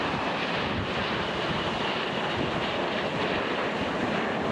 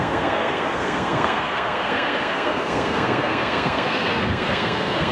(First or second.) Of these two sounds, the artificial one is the second